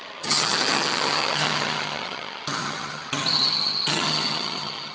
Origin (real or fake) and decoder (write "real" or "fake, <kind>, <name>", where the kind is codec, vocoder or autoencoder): fake, vocoder, HiFi-GAN